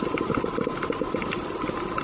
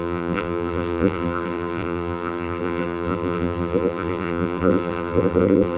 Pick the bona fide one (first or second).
first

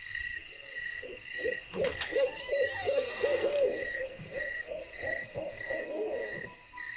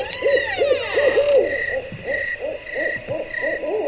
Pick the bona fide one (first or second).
second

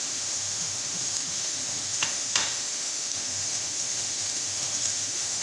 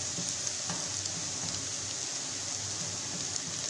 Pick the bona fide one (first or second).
second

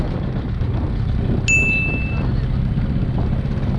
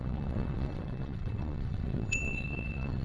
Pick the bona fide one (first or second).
first